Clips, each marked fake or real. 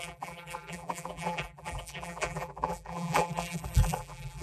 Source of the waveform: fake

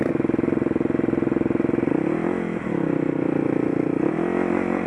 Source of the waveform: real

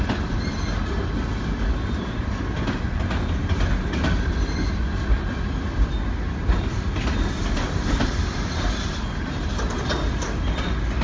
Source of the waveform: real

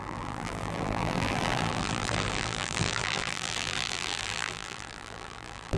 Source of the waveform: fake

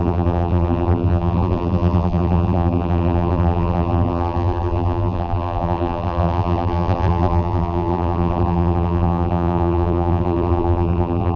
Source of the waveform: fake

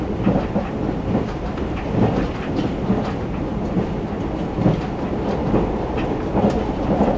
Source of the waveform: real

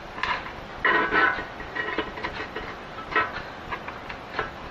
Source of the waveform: real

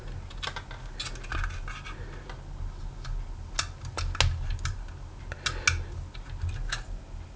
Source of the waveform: real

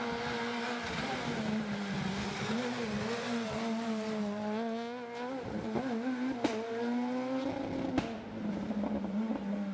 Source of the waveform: real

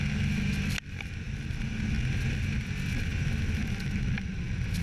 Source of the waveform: real